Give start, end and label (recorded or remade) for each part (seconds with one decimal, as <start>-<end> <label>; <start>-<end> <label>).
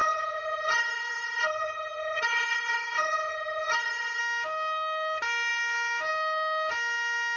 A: 0.0-4.2 remade; 4.2-7.4 recorded